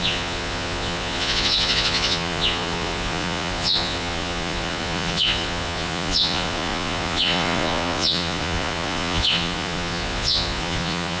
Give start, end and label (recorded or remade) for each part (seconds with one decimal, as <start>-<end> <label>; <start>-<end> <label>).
0.0-11.2 remade